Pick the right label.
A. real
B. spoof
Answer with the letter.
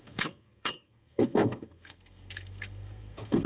B